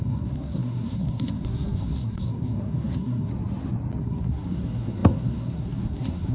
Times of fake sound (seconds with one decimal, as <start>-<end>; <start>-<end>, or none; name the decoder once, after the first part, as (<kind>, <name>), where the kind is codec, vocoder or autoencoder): 0.0-3.3 (codec, SNAC); 4.0-6.3